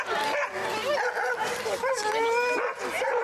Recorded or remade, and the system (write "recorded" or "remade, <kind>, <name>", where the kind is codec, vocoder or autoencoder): recorded